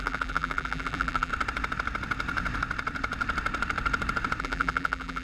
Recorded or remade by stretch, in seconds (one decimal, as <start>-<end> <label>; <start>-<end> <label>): 0.0-1.3 remade; 1.3-4.4 recorded; 4.4-5.2 remade